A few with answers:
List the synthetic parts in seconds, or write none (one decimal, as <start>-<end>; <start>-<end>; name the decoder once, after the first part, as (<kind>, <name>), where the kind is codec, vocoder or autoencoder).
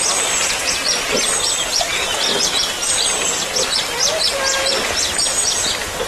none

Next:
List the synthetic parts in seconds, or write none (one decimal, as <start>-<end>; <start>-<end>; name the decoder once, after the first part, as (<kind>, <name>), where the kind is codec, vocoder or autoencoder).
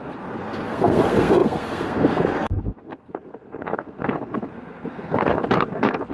0.0-6.1 (codec, SNAC)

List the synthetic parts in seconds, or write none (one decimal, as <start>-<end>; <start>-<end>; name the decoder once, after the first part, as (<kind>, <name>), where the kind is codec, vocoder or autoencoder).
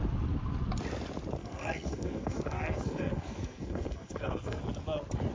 1.4-4.6 (codec, SNAC)